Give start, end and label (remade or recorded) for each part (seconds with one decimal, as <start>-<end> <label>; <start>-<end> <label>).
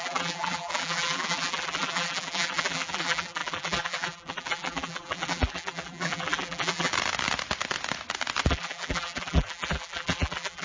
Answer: 0.0-6.9 remade; 6.9-8.5 recorded; 8.5-10.6 remade